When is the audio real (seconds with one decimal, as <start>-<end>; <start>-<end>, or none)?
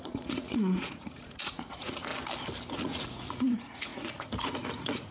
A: 2.1-2.7